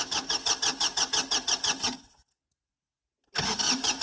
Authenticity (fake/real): real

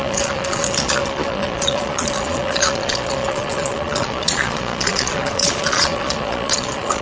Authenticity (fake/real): fake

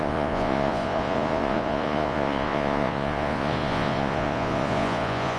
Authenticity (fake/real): fake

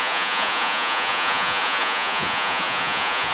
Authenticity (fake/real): fake